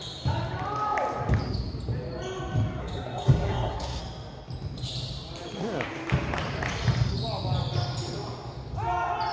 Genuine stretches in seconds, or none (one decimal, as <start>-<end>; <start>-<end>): 0.0-2.8; 4.0-9.3